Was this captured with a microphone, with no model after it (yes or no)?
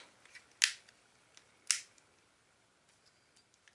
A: yes